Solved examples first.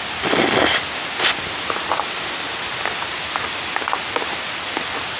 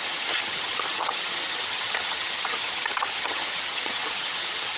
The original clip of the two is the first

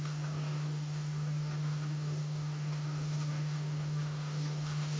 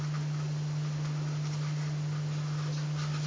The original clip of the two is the second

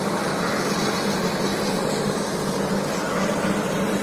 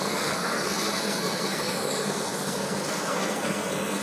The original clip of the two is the first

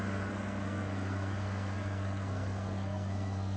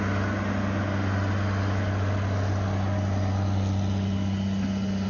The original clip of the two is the second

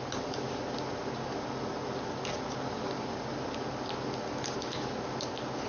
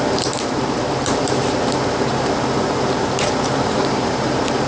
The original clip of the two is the first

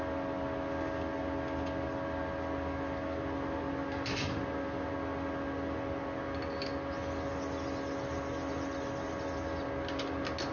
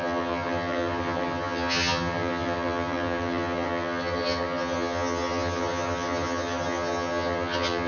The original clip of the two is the first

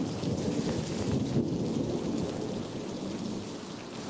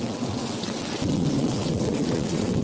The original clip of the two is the first